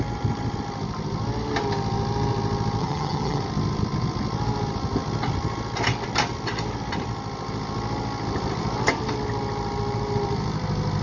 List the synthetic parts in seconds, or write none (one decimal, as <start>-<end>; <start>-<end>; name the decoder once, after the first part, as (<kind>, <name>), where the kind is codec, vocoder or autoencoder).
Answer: 2.8-3.4 (vocoder, HiFi-GAN)